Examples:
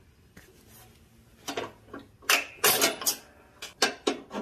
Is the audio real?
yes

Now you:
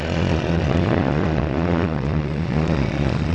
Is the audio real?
no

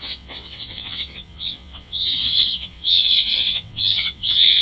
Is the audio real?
no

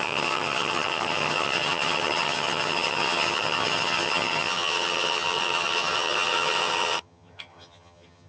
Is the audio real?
no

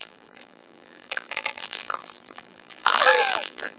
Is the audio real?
no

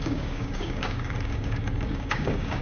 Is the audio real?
no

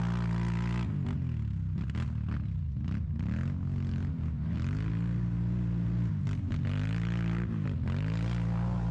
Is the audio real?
yes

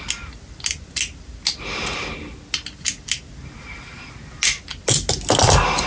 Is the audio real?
yes